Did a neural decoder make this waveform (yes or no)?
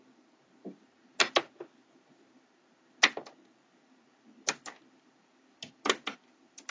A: no